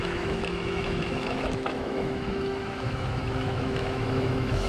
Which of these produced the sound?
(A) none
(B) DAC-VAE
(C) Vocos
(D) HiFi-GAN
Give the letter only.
B